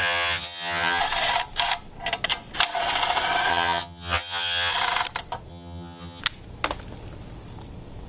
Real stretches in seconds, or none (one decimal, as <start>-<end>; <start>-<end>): 1.0-3.5; 4.7-5.5; 6.2-8.1